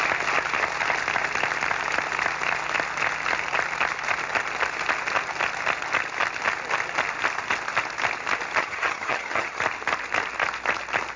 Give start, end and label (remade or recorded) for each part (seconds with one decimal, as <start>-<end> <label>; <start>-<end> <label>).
0.0-8.6 recorded; 8.6-9.6 remade; 9.6-11.2 recorded